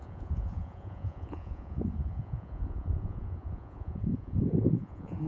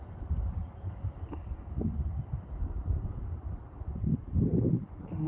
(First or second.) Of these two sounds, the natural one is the second